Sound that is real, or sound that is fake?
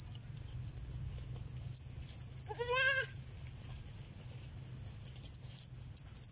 real